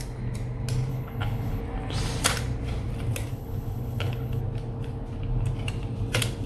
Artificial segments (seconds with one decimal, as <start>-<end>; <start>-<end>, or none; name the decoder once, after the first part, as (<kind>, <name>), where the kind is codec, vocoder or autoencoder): 0.9-1.6 (codec, HILCodec); 3.3-4.4